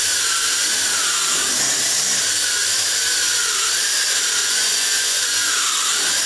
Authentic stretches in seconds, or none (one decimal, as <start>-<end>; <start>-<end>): 0.0-4.4; 5.5-6.3